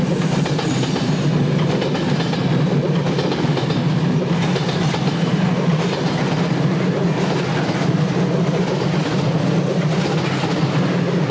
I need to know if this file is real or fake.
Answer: real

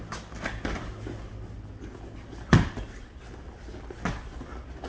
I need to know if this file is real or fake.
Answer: real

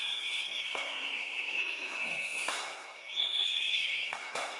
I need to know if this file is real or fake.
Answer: fake